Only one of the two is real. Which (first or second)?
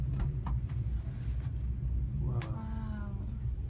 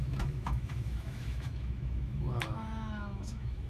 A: first